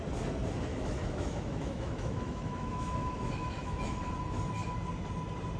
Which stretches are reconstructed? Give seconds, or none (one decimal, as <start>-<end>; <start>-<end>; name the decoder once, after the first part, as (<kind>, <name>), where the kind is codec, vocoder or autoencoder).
0.7-4.1 (autoencoder, DAC-VAE)